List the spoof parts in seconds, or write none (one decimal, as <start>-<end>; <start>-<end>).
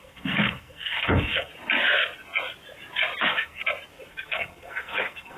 0.0-1.5; 3.2-3.6; 4.1-5.4